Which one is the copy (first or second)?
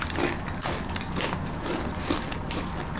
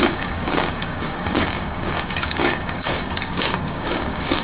second